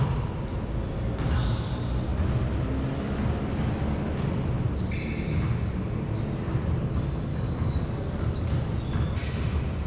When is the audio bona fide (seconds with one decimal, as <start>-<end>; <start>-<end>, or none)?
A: 0.0-7.3; 8.7-9.9